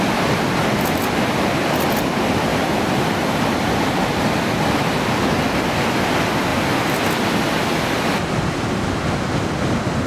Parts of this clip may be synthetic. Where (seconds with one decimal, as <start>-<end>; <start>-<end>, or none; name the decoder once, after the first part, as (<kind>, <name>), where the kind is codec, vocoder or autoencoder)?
2.5-4.9 (vocoder, BigVGAN v2)